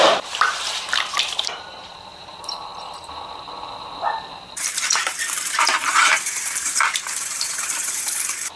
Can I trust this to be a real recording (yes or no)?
no